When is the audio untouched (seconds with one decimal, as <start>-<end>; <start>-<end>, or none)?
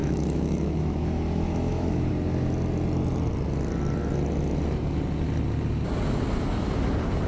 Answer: 2.1-7.3